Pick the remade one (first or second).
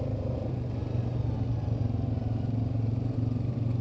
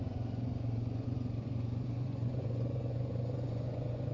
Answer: second